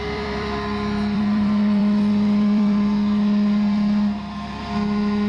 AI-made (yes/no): yes